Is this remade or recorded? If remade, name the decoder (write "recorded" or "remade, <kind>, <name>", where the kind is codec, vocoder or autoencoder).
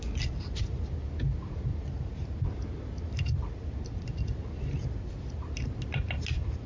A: recorded